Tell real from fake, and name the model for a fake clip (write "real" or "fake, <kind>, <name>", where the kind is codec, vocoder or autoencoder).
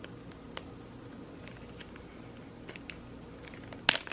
real